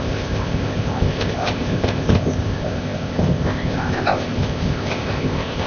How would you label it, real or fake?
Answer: fake